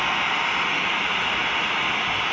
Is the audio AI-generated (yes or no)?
no